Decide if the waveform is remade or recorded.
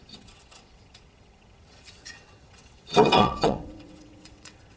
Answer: remade